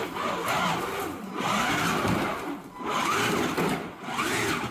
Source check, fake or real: real